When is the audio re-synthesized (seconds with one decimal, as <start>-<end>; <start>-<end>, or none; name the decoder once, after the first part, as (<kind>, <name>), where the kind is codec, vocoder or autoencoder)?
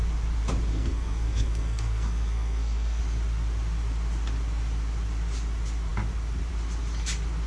0.7-3.0 (codec, SNAC)